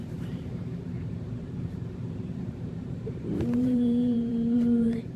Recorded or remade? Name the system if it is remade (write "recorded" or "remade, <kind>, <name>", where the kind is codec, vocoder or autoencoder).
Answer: remade, vocoder, BigVGAN v2